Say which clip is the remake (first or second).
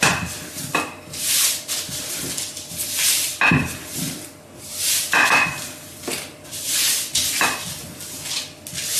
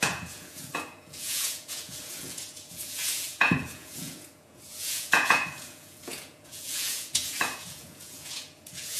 second